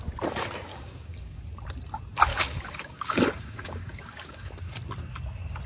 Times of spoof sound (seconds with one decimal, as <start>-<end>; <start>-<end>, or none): 0.7-1.4; 2.3-4.7

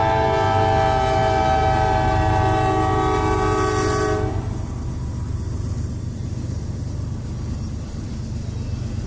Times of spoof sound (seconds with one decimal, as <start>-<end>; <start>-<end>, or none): none

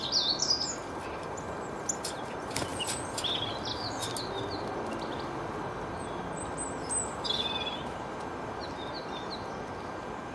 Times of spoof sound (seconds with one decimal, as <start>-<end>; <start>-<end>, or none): none

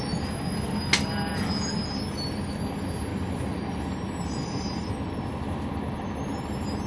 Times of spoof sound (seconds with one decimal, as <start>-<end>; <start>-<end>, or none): 3.1-4.9